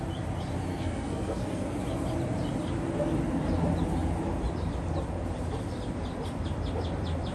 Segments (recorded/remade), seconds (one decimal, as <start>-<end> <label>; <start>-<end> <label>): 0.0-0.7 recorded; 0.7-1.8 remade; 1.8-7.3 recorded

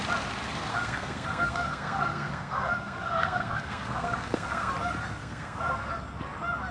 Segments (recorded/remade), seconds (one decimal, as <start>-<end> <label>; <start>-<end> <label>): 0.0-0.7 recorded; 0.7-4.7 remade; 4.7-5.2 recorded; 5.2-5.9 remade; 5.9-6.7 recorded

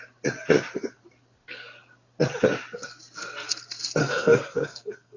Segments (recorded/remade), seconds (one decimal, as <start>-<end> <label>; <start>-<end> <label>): 0.0-4.0 recorded; 4.0-5.2 remade

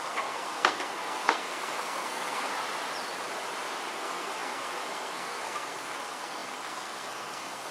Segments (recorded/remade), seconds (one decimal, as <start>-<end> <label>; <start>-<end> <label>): 0.0-2.5 remade; 2.5-3.9 recorded; 3.9-7.7 remade